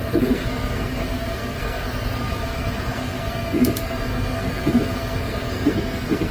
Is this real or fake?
fake